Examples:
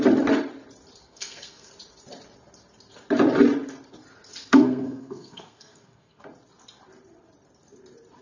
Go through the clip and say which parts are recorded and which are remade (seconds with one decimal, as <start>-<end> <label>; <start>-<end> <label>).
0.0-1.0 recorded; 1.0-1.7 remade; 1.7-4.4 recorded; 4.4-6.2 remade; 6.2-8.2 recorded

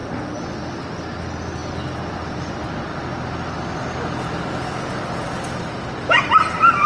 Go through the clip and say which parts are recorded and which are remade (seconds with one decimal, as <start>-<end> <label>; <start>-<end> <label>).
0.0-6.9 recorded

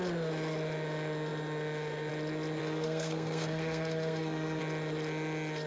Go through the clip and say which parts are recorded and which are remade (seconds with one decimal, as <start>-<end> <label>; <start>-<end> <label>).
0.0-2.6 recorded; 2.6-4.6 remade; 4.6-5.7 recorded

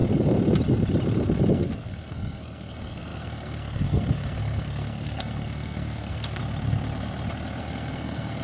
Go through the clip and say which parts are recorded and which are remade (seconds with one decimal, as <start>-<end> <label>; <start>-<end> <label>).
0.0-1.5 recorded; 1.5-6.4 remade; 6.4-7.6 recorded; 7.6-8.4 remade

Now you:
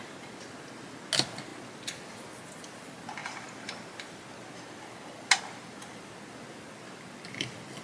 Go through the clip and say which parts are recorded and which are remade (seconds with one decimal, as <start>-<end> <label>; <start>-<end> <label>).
0.0-7.8 recorded

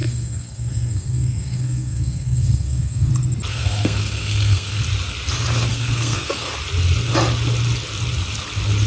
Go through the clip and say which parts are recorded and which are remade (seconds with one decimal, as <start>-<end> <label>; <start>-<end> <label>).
0.0-3.1 remade; 3.1-3.5 recorded; 3.5-4.8 remade; 4.8-5.7 recorded; 5.7-6.5 remade; 6.5-8.9 recorded